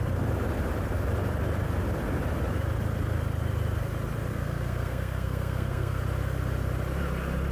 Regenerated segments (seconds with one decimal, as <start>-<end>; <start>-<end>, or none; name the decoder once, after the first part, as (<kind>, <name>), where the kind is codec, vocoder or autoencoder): 4.3-6.0 (codec, SNAC)